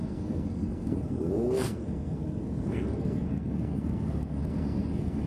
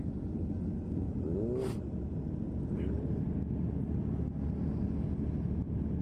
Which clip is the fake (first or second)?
first